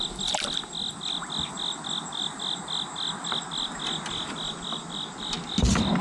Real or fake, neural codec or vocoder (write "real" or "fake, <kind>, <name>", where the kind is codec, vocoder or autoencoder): real